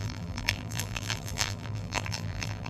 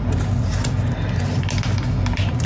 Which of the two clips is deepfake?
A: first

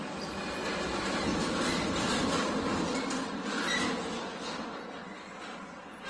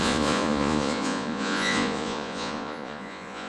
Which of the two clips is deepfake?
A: second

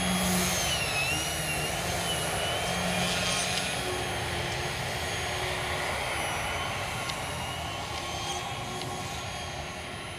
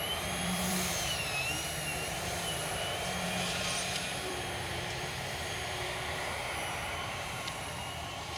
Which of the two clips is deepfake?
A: second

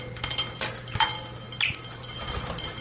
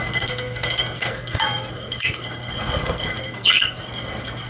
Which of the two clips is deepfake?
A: second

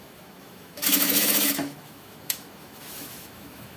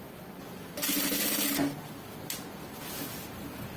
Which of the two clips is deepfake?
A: first